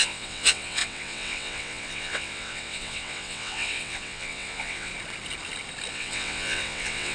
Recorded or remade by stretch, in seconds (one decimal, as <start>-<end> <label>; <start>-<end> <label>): 0.0-4.9 remade; 4.9-5.9 recorded; 5.9-7.1 remade